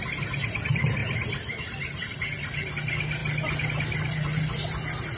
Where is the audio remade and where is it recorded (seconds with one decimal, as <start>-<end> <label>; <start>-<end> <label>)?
0.0-3.2 remade; 3.2-5.2 recorded